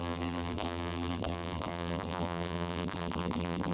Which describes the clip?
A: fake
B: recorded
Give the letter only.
A